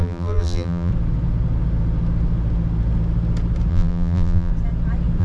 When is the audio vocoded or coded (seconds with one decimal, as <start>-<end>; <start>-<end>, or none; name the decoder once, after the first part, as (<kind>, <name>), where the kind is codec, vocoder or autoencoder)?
0.0-0.9 (vocoder, BigVGAN v2); 3.7-4.5